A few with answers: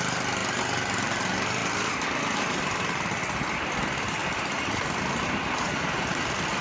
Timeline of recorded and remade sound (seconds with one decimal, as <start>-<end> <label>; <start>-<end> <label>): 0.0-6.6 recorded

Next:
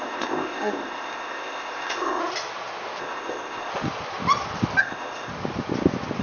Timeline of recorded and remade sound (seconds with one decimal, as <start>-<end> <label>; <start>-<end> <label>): 0.0-2.2 remade; 2.2-3.0 recorded; 3.0-3.7 remade; 3.7-4.8 recorded; 4.8-5.3 remade; 5.3-6.2 recorded

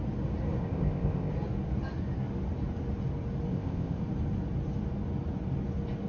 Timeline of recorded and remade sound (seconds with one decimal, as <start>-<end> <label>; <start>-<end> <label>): 0.0-0.6 recorded; 0.6-1.3 remade; 1.3-3.5 recorded; 3.5-4.0 remade; 4.0-6.1 recorded

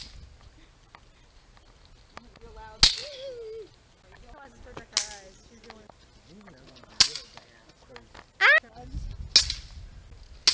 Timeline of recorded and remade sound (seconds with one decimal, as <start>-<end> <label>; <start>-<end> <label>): 0.0-10.5 recorded

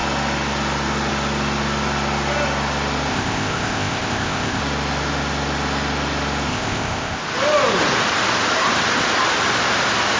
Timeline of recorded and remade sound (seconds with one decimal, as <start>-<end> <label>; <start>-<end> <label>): 0.0-3.1 recorded; 3.1-4.6 remade; 4.6-6.5 recorded; 6.5-7.2 remade; 7.2-10.2 recorded